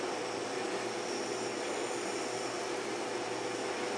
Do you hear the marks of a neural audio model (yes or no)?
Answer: no